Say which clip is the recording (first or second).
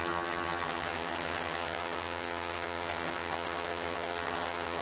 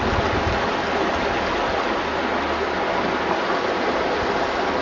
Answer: second